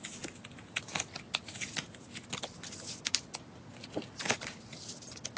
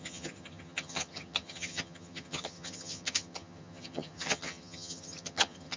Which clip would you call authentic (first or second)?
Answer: first